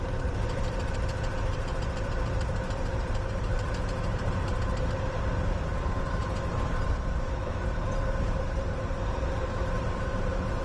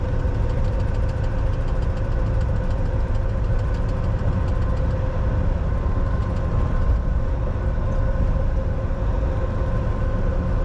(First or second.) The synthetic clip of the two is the first